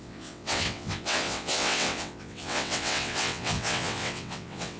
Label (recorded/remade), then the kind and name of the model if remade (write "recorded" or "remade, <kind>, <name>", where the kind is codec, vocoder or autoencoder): remade, vocoder, WaveNeXt